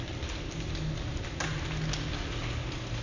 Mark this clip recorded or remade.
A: recorded